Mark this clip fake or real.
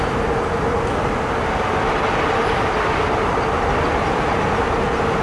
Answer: real